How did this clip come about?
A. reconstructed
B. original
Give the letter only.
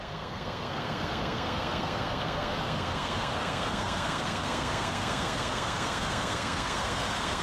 A